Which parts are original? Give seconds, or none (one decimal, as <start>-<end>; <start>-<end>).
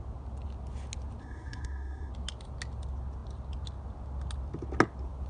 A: 0.0-1.2; 2.1-5.3